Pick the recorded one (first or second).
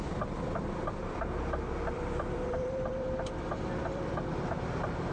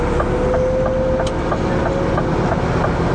second